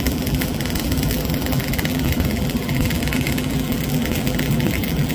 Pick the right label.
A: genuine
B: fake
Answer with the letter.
B